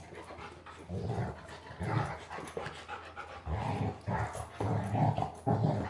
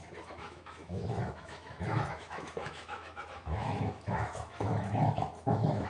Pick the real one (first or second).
first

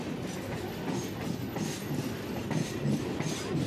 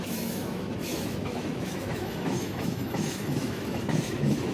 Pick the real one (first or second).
first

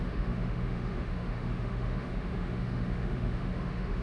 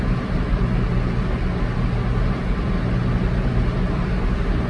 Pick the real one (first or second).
second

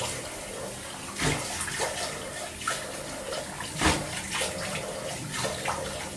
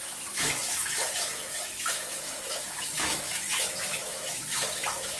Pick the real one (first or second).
first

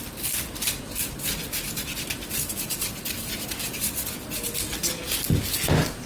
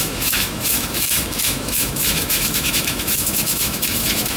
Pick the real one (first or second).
first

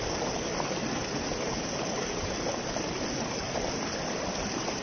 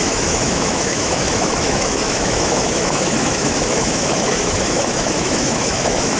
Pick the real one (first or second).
first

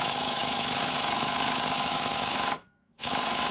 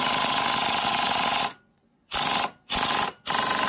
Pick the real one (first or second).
second